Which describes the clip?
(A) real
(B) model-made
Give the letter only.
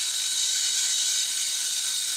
B